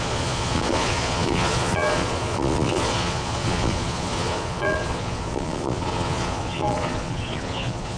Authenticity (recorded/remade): remade